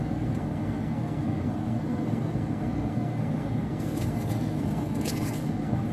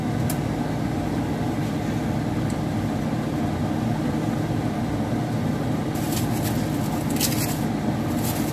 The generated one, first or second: first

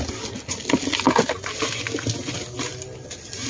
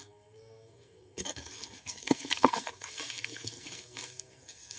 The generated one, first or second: second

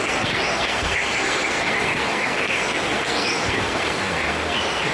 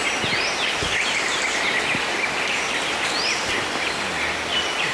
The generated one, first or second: first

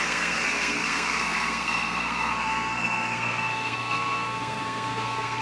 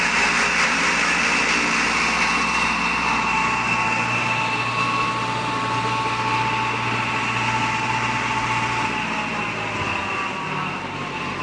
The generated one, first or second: first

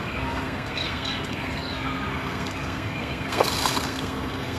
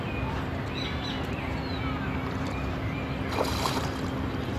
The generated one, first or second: first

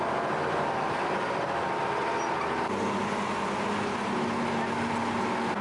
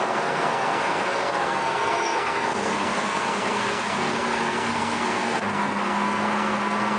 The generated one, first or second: second